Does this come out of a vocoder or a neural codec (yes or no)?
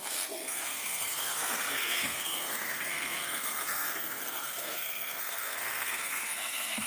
yes